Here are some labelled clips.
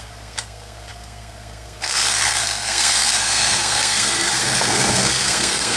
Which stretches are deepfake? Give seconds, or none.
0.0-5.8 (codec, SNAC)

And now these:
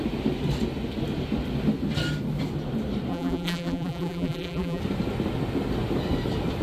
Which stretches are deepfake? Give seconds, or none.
3.1-4.8 (vocoder, BigVGAN v2)

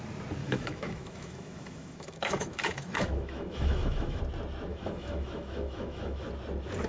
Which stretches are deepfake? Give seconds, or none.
0.4-4.2 (autoencoder, DAC-VAE); 4.7-6.3